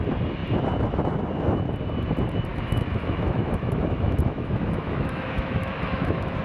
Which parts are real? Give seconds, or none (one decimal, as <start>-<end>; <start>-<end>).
0.0-2.5